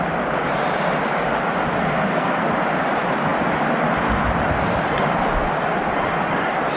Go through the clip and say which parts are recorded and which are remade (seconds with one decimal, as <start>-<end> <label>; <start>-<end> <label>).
0.0-1.8 recorded; 1.8-2.5 remade; 2.5-6.8 recorded